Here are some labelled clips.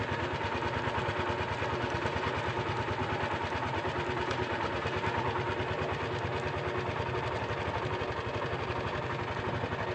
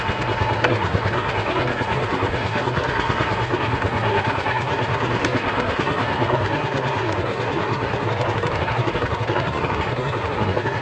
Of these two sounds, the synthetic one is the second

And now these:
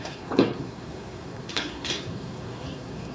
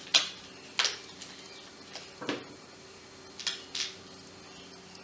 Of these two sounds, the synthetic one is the first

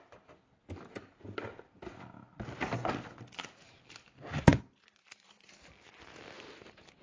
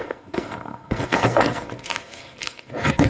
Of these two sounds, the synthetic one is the second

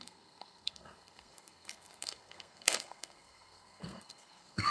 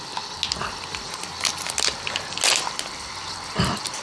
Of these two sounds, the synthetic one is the first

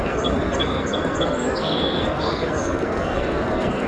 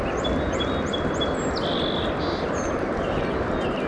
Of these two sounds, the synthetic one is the first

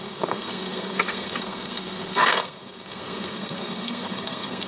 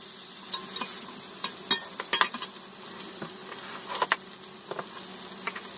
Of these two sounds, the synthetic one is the first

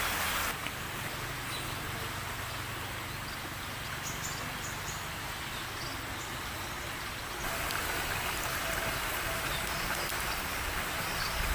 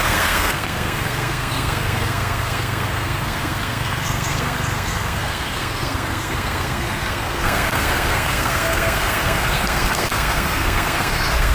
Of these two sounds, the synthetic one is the second